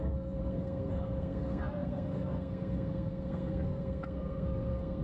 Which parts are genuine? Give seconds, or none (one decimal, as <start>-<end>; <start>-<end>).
none